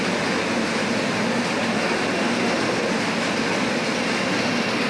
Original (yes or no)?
yes